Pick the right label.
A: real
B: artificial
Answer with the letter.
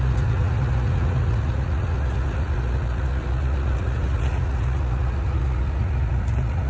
B